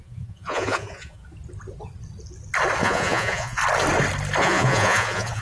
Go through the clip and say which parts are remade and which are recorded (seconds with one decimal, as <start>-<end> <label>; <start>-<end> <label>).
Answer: 0.0-1.2 remade; 1.2-2.8 recorded; 2.8-3.6 remade; 3.6-4.4 recorded; 4.4-5.4 remade